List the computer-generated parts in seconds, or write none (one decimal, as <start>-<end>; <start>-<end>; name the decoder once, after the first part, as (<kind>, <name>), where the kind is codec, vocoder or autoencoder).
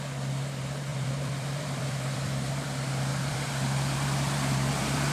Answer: 0.9-2.5 (vocoder, BigVGAN v2); 3.1-5.1